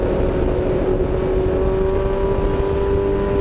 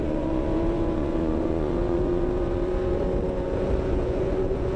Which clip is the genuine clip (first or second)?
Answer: first